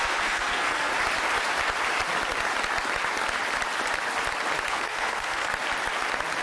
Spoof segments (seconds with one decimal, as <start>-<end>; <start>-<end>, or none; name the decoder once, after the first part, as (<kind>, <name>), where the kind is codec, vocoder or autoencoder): 0.0-0.9 (codec, SNAC); 4.7-5.5